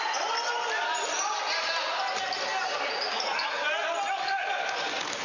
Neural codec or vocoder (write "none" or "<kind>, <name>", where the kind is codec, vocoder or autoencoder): none